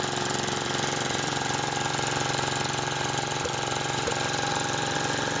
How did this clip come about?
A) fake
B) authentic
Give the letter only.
A